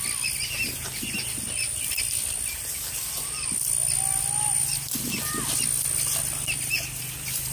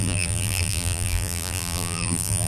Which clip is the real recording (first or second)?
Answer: first